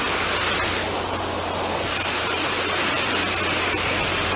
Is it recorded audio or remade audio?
recorded